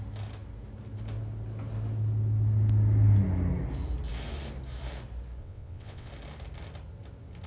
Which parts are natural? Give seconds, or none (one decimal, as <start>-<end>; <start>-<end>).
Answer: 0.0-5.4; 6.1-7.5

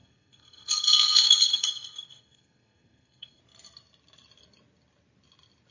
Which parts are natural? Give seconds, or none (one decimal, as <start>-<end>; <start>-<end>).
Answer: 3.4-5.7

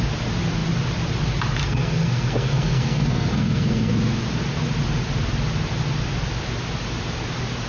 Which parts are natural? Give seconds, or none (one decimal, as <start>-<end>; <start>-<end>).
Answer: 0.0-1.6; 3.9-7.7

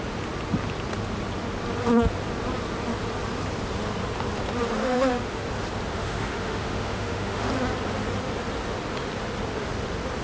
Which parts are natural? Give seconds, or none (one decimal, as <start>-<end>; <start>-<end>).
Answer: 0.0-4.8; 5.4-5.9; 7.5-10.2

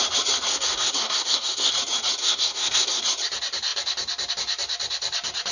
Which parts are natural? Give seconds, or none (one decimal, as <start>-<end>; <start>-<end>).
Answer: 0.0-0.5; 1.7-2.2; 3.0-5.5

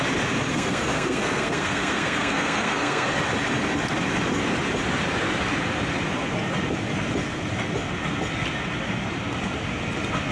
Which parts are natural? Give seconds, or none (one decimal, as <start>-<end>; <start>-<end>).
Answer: 0.0-0.5; 3.2-10.3

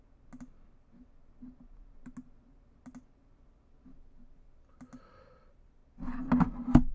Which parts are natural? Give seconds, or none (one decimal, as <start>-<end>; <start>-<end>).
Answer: 0.0-6.9

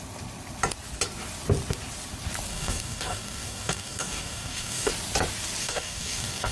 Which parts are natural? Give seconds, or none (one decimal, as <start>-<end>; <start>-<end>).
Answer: 0.0-2.5; 4.9-5.6